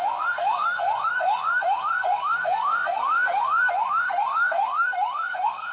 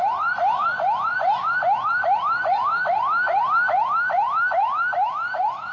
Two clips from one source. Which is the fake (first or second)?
first